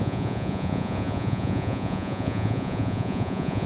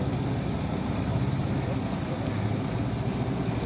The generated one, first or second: first